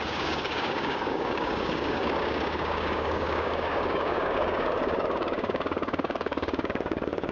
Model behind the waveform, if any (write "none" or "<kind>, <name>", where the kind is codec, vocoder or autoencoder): codec, DAC